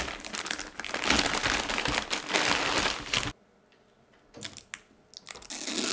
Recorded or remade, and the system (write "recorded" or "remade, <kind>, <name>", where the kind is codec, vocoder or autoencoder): recorded